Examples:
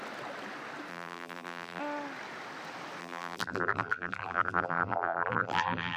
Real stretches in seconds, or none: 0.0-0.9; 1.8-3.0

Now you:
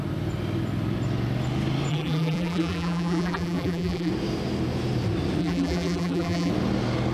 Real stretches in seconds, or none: 0.0-1.9; 4.1-5.4; 6.5-7.1

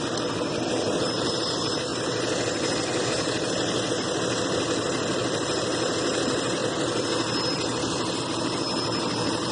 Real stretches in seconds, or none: 1.9-4.4; 6.6-8.1

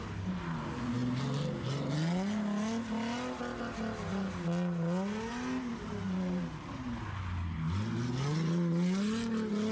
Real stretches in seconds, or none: 0.0-5.7; 7.2-9.7

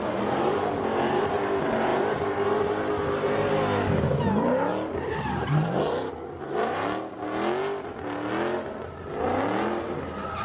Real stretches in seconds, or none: 0.0-4.7; 6.1-10.4

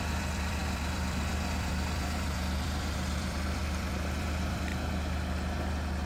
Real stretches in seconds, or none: 4.7-6.1

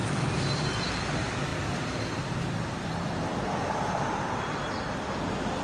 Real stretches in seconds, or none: 0.0-1.5; 4.7-5.6

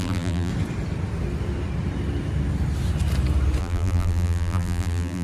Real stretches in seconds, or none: 0.5-3.6